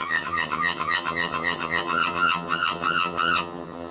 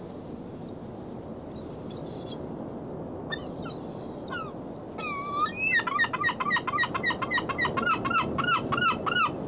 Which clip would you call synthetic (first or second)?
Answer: first